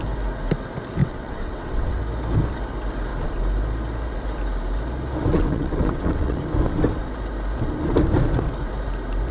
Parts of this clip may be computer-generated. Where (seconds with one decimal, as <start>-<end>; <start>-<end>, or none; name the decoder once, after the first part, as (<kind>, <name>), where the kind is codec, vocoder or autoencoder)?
1.0-2.0 (vocoder, WaveNeXt); 5.3-6.4